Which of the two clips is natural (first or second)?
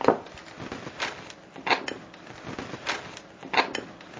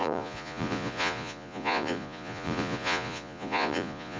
first